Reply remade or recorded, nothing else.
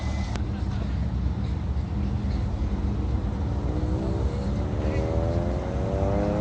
recorded